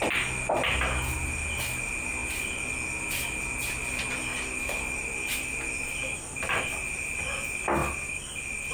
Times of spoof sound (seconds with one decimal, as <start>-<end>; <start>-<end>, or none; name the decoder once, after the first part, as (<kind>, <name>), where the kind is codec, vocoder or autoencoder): 4.3-7.2 (vocoder, BigVGAN v2); 7.8-8.7